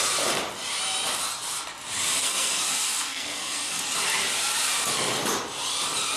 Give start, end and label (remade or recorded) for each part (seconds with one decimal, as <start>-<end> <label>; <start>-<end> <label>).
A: 0.0-2.2 recorded; 2.2-3.8 remade; 3.8-6.2 recorded